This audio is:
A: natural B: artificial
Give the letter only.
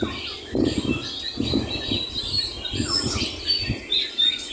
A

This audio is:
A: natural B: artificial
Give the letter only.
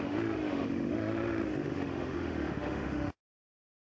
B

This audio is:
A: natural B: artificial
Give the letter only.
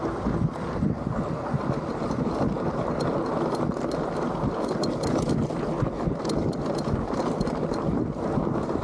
A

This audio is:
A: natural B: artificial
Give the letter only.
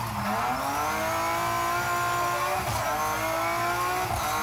A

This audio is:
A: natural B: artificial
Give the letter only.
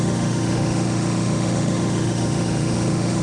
B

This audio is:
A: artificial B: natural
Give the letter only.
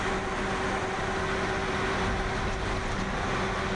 B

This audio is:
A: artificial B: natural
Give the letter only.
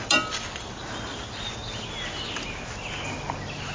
B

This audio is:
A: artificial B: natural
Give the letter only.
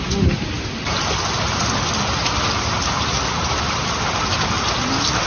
B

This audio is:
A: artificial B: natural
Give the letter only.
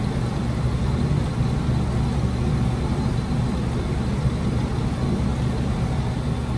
B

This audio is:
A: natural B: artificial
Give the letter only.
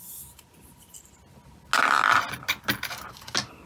A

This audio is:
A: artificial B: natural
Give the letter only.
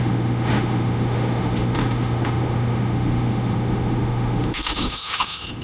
A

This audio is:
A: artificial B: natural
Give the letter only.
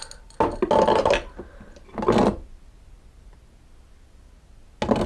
B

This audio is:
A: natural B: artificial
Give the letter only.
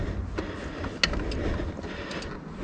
A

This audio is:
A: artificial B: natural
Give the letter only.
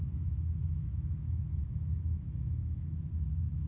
A